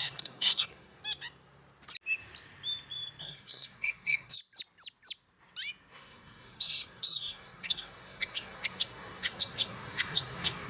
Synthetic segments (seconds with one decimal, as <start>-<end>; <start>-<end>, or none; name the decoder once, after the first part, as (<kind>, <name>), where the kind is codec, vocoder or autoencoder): 0.0-1.0 (codec, SNAC); 3.2-4.4; 5.9-10.7